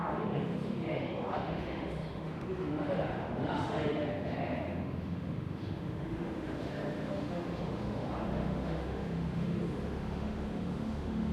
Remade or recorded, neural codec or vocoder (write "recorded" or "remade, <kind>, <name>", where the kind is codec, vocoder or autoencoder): remade, autoencoder, DAC-VAE